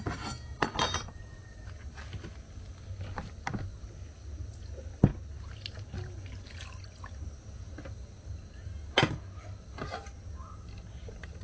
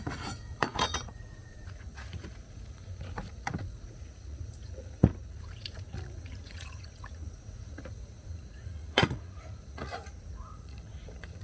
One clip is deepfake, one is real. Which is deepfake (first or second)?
second